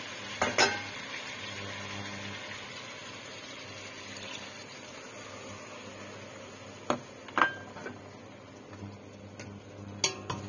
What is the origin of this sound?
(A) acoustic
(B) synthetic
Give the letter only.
A